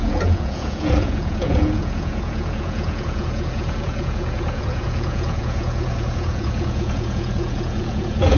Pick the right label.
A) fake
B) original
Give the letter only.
A